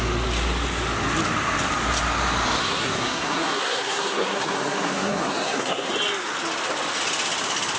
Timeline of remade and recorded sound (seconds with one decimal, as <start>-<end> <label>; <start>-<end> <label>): 0.0-2.6 recorded; 2.6-5.9 remade; 5.9-7.8 recorded